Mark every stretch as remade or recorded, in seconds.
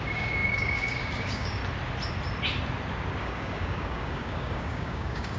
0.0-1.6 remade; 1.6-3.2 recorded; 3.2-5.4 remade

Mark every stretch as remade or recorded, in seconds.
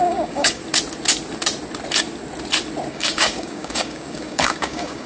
0.0-0.6 remade; 0.6-2.9 recorded; 2.9-5.1 remade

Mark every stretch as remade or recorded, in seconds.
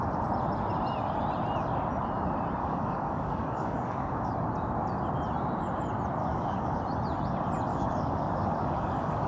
0.0-2.6 recorded; 2.6-4.3 remade; 4.3-6.2 recorded; 6.2-6.8 remade; 6.8-7.7 recorded; 7.7-9.3 remade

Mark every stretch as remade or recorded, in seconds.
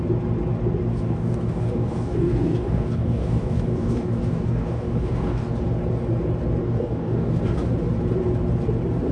0.0-0.9 recorded; 0.9-5.5 remade; 5.5-6.6 recorded; 6.6-7.4 remade; 7.4-9.1 recorded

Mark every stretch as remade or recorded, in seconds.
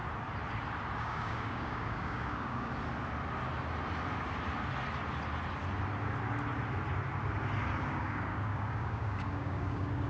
0.0-1.0 recorded; 1.0-2.7 remade; 2.7-7.8 recorded; 7.8-10.1 remade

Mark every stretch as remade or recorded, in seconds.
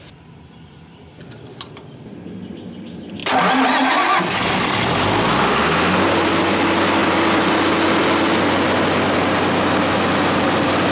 0.0-10.9 recorded